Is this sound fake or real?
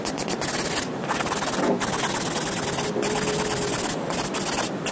real